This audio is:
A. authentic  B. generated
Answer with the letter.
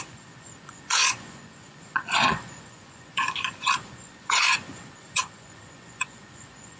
B